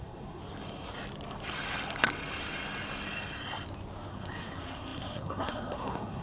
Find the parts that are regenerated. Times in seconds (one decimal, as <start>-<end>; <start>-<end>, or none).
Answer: 0.0-0.4; 4.1-6.2